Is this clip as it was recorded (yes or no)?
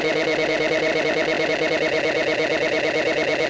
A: no